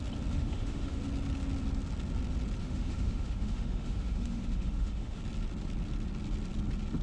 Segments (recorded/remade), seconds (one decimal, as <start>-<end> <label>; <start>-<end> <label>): 0.0-0.4 recorded; 0.4-1.0 remade; 1.0-2.6 recorded; 2.6-5.2 remade; 5.2-7.0 recorded